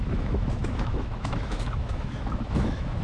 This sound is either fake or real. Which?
fake